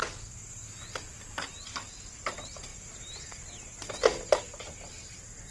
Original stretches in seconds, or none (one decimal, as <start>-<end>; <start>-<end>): 0.0-5.5